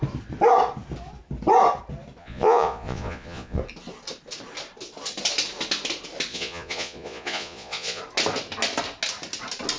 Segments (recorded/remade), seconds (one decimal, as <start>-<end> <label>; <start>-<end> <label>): 0.0-2.2 recorded; 2.2-3.6 remade; 3.6-6.3 recorded; 6.3-8.0 remade; 8.0-9.8 recorded